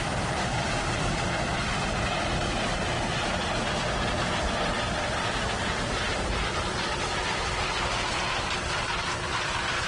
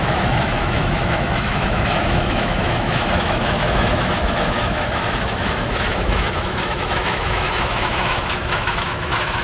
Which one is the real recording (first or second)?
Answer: first